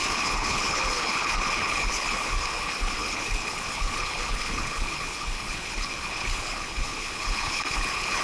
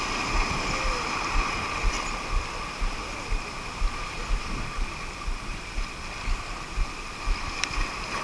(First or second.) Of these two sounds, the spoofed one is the first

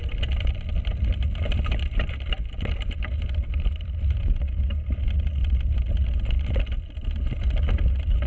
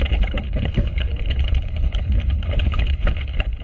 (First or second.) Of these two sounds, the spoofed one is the second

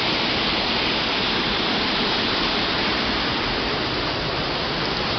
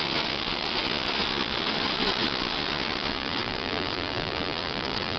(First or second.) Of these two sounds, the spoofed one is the second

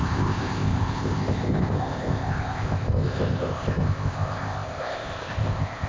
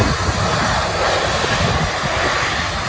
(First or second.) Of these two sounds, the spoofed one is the first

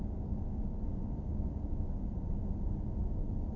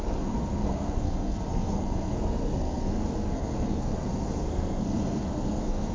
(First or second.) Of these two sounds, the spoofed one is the second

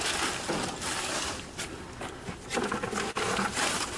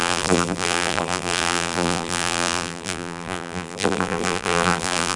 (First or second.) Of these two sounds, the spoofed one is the second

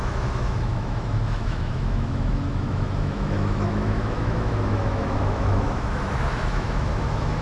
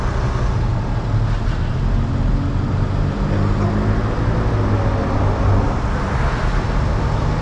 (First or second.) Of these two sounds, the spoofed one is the first